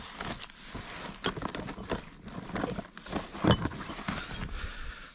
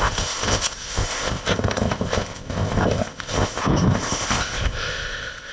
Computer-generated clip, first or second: second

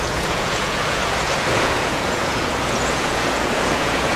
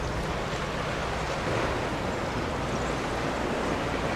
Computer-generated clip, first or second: first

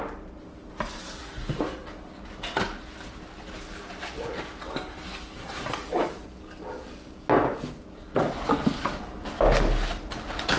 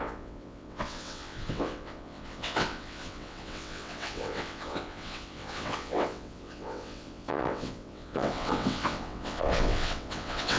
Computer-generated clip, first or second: second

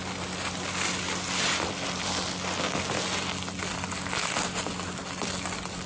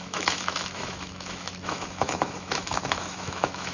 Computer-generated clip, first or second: second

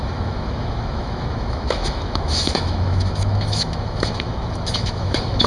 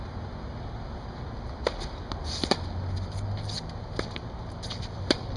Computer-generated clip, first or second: first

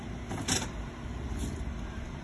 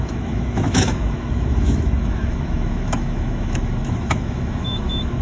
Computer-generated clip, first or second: second